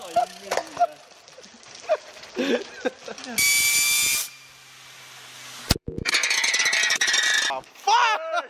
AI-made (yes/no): no